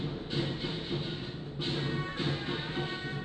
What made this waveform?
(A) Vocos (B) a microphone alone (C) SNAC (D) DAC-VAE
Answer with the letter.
B